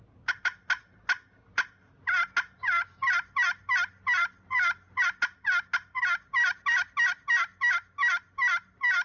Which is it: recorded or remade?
recorded